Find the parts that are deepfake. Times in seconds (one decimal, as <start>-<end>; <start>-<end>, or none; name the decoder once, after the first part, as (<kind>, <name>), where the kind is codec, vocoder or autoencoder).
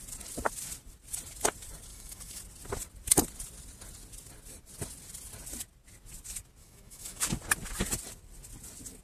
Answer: 1.9-2.4 (autoencoder, DAC-VAE); 6.6-7.2